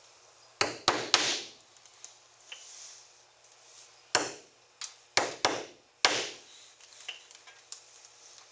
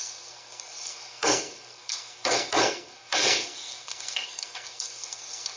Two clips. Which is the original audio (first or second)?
first